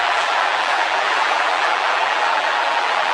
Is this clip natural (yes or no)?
no